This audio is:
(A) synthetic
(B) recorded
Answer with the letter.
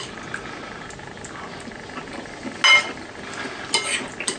B